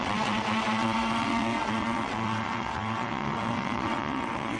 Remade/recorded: remade